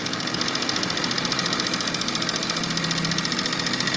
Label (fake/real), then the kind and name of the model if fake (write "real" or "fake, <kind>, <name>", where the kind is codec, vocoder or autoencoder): real